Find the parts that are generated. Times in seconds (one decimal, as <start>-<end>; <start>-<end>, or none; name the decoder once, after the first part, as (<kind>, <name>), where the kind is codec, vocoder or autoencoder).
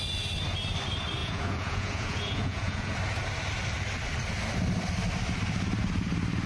1.2-2.9 (vocoder, Vocos)